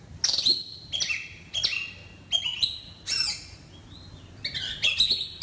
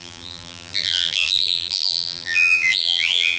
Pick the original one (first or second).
first